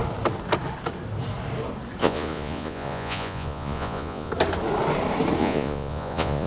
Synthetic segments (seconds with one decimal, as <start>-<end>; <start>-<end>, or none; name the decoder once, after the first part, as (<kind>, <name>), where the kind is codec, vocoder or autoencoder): 2.0-4.3 (vocoder, Vocos); 5.4-6.5